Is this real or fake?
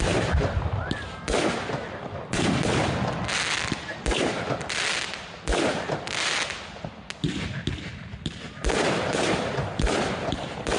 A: real